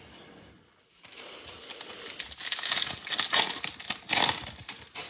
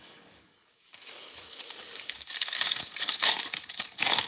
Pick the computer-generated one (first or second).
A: second